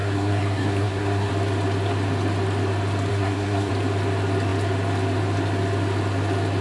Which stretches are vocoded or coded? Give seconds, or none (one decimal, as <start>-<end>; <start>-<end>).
0.0-1.3; 3.1-3.7